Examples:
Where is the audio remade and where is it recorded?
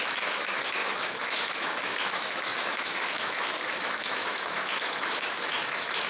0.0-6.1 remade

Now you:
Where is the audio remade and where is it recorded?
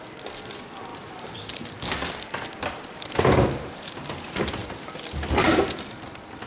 0.0-0.9 recorded; 0.9-3.2 remade; 3.2-6.5 recorded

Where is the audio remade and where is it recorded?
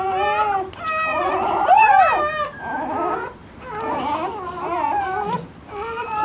0.0-1.1 recorded; 1.1-2.0 remade; 2.0-6.2 recorded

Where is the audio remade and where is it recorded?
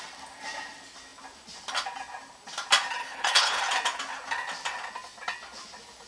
0.0-3.0 recorded; 3.0-3.6 remade; 3.6-6.1 recorded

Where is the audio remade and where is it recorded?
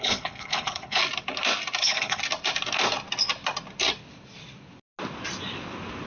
0.0-1.0 remade; 1.0-1.8 recorded; 1.8-2.2 remade; 2.2-6.1 recorded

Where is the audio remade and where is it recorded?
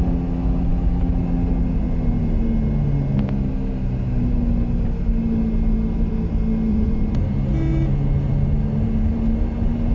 0.0-6.7 recorded; 6.7-7.2 remade; 7.2-9.9 recorded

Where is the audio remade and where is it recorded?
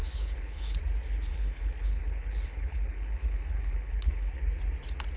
0.0-0.8 remade; 0.8-1.3 recorded; 1.3-4.4 remade; 4.4-5.2 recorded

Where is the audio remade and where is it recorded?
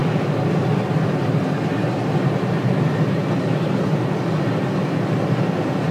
0.0-5.9 recorded